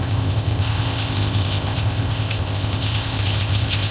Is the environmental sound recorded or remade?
remade